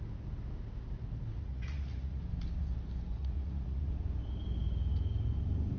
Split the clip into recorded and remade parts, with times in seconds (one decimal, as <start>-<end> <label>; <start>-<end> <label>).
0.0-1.4 recorded; 1.4-2.2 remade; 2.2-3.2 recorded; 3.2-3.9 remade; 3.9-5.8 recorded